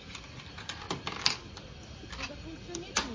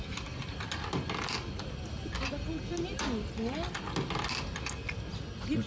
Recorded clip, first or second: second